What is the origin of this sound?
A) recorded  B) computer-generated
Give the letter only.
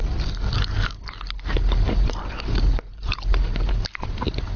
A